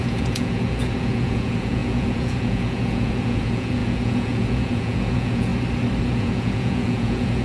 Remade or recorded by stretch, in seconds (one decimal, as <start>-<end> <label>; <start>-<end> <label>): 0.0-5.5 remade; 5.5-6.0 recorded; 6.0-7.4 remade